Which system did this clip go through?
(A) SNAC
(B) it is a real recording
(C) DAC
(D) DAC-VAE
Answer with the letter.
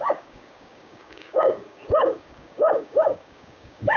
C